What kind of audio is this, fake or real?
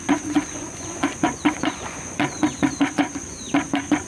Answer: fake